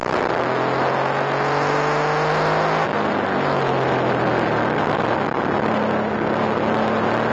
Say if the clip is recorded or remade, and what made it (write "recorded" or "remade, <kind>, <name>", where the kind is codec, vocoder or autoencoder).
recorded